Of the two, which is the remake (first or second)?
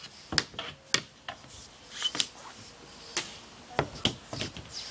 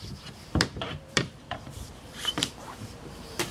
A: second